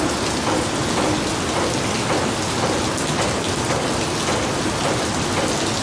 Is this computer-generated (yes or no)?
no